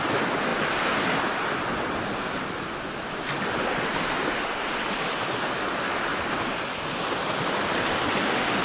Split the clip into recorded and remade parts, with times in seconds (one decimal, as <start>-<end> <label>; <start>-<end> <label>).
0.0-0.5 recorded; 0.5-5.5 remade; 5.5-6.1 recorded; 6.1-8.1 remade; 8.1-8.6 recorded